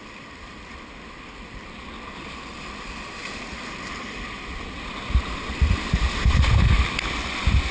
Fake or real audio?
real